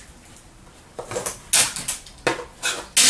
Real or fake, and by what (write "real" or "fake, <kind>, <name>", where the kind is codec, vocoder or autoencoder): real